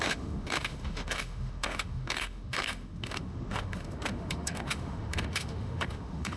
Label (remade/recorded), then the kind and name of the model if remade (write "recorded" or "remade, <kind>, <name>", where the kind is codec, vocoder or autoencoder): remade, autoencoder, DAC-VAE